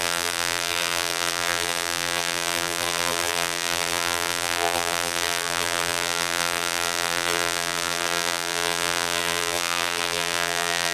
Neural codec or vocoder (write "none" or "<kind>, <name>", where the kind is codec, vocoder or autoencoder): vocoder, BigVGAN v2